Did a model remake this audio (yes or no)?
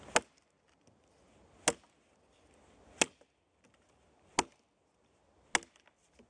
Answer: no